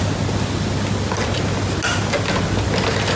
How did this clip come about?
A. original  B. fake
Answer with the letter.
A